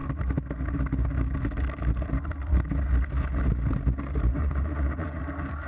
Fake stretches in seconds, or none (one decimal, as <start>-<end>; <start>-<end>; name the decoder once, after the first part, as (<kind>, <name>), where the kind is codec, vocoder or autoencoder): 4.4-5.2 (vocoder, Vocos)